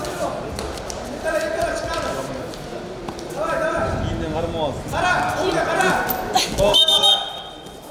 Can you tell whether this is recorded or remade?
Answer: recorded